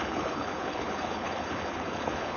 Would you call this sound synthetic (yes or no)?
yes